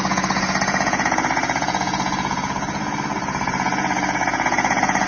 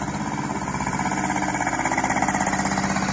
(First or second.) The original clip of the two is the second